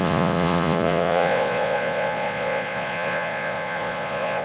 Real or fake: fake